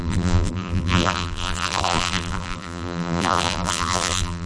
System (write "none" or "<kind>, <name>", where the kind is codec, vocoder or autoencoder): vocoder, BigVGAN v2